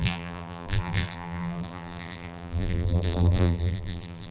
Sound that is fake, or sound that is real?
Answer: fake